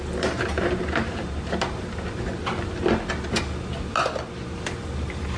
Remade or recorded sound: recorded